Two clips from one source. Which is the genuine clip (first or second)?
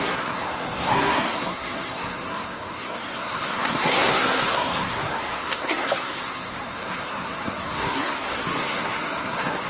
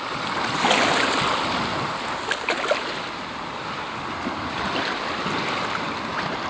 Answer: second